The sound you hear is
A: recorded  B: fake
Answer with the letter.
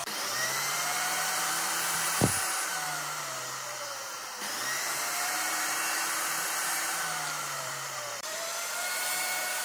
B